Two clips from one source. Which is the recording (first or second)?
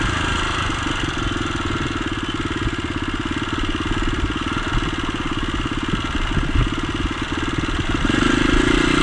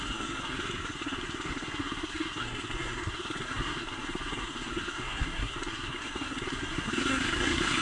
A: first